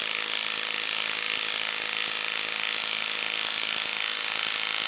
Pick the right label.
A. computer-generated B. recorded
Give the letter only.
B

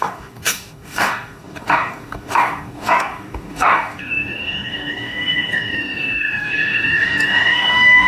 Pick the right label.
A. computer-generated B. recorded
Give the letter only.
A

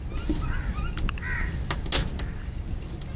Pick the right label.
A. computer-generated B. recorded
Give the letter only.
B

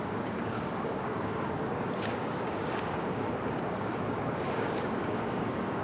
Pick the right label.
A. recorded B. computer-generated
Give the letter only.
B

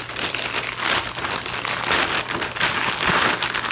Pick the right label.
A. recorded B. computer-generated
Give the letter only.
A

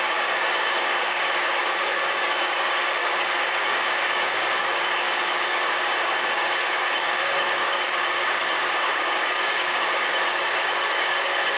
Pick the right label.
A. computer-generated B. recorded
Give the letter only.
A